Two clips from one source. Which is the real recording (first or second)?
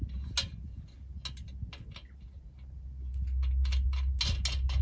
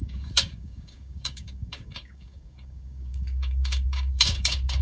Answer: first